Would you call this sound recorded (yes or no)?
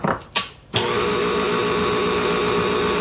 yes